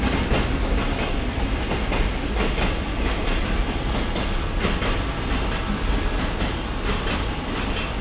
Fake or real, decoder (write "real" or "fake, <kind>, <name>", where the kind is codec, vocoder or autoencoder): real